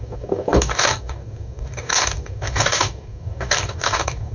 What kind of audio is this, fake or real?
fake